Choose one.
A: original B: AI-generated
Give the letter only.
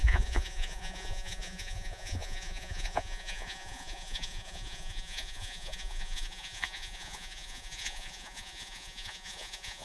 B